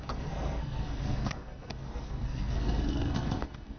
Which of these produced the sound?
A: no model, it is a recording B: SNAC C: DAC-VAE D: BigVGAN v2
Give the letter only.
B